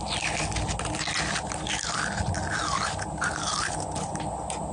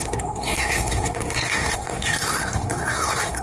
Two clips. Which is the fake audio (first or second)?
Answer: second